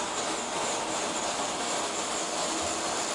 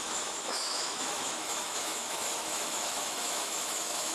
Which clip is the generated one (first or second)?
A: second